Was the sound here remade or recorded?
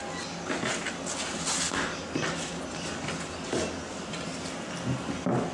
recorded